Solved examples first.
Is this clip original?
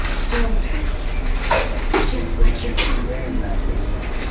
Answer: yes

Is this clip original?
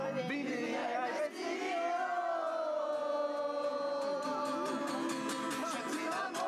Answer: yes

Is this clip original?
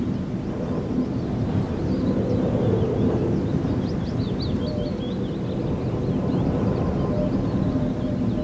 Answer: yes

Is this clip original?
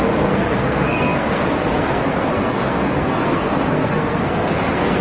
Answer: no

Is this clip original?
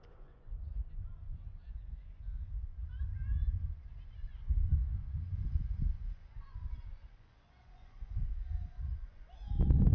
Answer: no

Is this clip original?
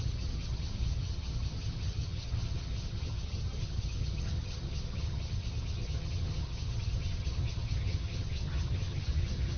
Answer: no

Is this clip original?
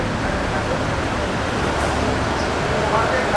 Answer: yes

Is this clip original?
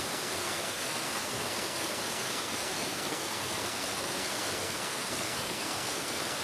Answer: no